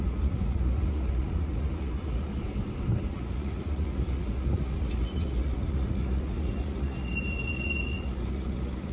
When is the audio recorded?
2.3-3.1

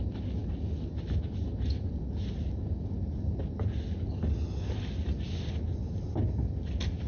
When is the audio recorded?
0.0-7.1

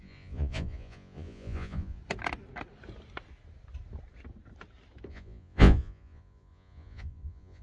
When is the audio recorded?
2.0-5.1

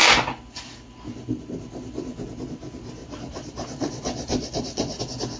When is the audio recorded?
0.0-3.0; 5.0-5.4